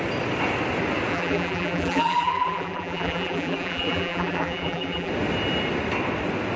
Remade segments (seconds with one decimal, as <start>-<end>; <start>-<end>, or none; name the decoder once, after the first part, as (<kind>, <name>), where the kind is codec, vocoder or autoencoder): 1.1-5.1 (vocoder, BigVGAN v2)